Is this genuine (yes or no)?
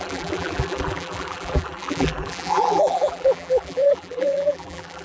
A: no